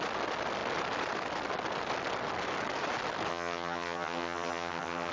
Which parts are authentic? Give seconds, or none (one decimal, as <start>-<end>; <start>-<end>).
0.0-3.3